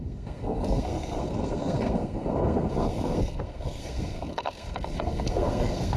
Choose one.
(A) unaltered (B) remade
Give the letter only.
B